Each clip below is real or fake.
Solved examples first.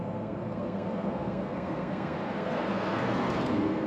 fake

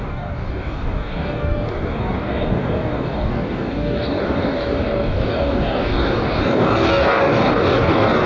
fake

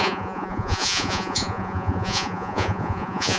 fake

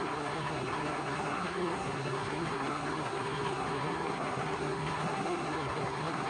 fake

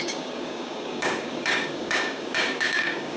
fake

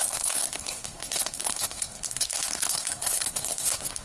fake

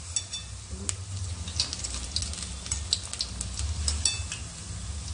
real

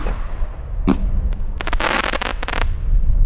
real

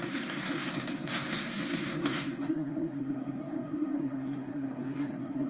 fake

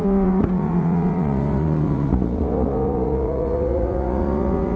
fake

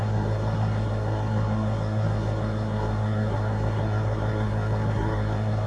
fake